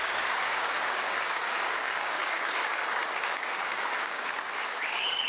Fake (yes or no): yes